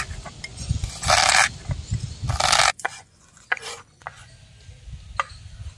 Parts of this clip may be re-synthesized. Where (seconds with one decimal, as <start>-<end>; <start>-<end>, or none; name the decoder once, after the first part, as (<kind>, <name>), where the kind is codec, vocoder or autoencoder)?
0.5-1.1 (vocoder, Vocos); 2.7-4.3